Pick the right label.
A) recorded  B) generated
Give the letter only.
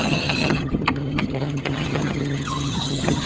B